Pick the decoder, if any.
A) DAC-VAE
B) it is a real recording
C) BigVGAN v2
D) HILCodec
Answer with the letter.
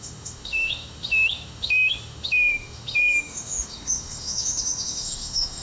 A